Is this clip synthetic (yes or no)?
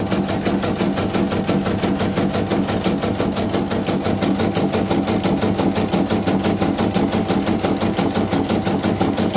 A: no